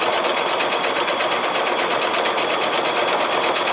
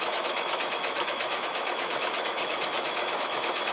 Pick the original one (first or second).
first